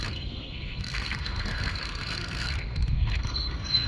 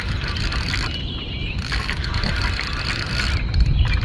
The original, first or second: second